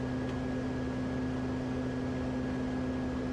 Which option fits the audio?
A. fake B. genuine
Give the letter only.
B